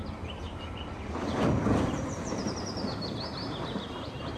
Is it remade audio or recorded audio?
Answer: remade